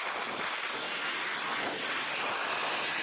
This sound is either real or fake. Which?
real